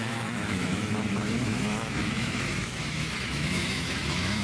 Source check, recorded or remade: remade